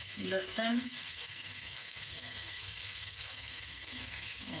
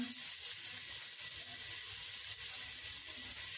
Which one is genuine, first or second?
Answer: second